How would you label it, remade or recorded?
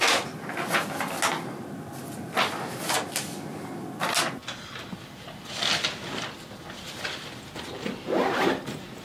recorded